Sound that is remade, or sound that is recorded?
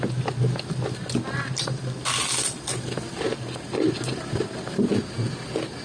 recorded